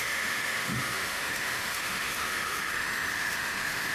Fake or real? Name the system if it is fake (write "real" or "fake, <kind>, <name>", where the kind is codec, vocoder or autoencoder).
fake, autoencoder, DAC-VAE